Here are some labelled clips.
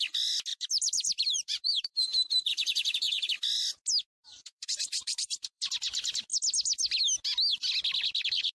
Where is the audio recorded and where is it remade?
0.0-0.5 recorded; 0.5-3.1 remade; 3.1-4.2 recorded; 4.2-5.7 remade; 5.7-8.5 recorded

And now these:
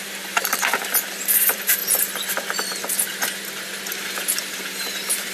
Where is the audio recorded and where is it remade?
0.0-1.8 remade; 1.8-4.6 recorded; 4.6-5.3 remade

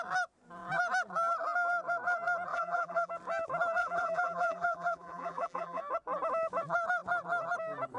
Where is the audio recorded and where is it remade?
0.0-2.5 recorded; 2.5-3.1 remade; 3.1-3.8 recorded; 3.8-5.8 remade; 5.8-8.0 recorded

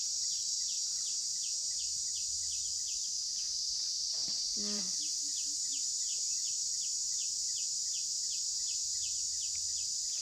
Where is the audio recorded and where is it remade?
0.0-10.2 remade

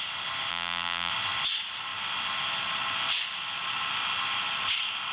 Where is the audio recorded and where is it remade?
0.0-0.5 recorded; 0.5-1.1 remade; 1.1-5.1 recorded

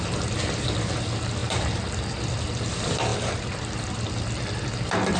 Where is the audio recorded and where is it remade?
0.0-5.2 recorded